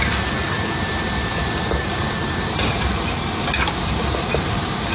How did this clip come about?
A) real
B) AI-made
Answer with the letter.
B